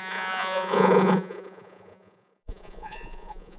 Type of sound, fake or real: fake